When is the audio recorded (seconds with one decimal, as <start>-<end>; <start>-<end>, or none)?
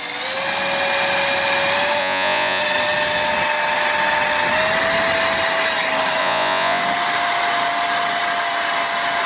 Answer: 0.0-2.0; 2.6-6.2; 6.8-9.3